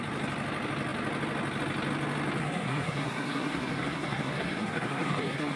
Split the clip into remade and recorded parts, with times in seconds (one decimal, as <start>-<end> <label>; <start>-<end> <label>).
0.0-2.4 recorded; 2.4-5.6 remade